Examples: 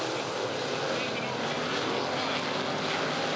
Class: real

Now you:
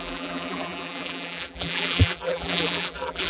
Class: fake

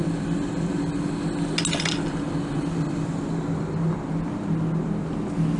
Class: real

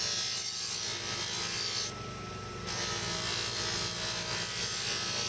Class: real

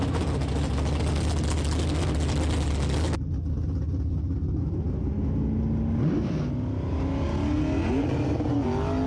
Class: real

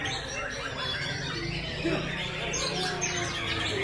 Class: real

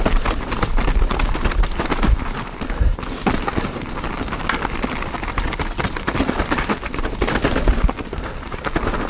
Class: real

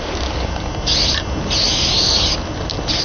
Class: real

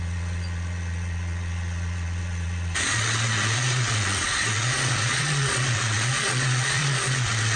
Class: fake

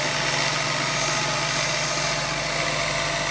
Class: real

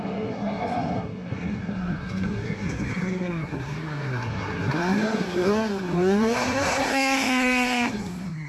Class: fake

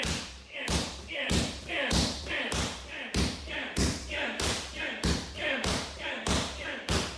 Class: fake